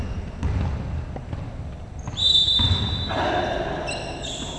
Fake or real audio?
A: real